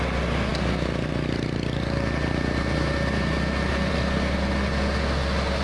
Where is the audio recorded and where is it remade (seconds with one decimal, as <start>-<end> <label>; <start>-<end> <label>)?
0.0-5.6 recorded